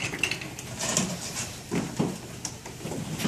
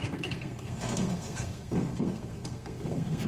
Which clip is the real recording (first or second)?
first